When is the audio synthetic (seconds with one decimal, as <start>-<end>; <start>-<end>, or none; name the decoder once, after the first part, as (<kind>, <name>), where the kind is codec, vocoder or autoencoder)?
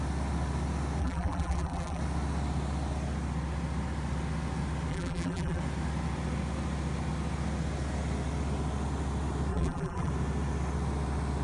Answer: 1.0-2.0 (vocoder, BigVGAN v2); 4.9-5.6; 9.5-10.1